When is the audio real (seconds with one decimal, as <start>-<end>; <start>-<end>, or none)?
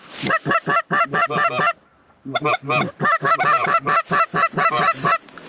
0.0-5.5